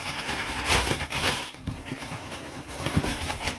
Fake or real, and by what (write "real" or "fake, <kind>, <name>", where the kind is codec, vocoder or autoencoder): fake, codec, SNAC